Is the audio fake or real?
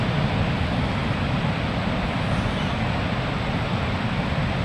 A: real